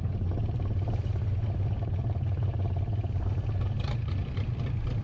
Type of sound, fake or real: real